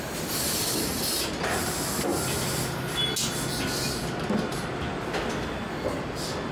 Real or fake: real